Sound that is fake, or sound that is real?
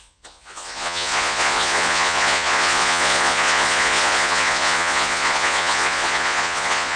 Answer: fake